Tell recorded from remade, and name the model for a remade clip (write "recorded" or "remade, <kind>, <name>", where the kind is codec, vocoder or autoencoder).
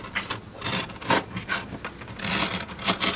recorded